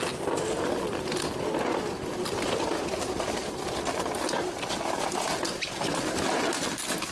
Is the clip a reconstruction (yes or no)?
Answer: no